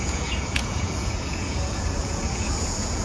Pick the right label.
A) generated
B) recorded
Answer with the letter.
A